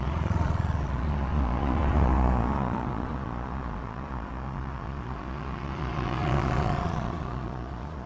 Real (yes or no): no